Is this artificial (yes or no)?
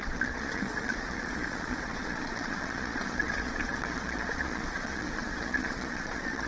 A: yes